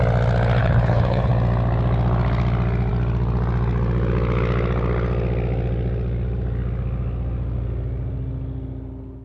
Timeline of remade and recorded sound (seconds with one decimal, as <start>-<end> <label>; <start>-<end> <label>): 0.0-0.6 recorded; 0.6-1.3 remade; 1.3-9.2 recorded